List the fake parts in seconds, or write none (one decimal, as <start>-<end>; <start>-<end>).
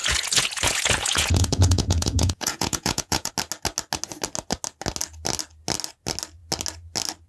0.0-3.3